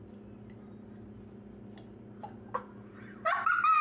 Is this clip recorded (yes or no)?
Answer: yes